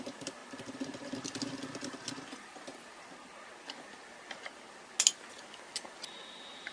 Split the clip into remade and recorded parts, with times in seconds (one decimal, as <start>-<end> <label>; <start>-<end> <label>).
0.0-6.7 recorded